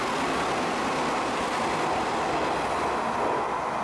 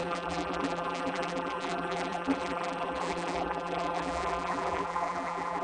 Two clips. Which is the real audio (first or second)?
first